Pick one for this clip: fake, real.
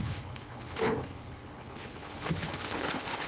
fake